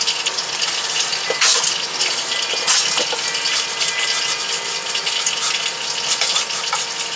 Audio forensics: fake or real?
real